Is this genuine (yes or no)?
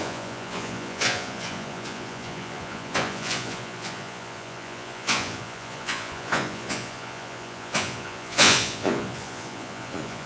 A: no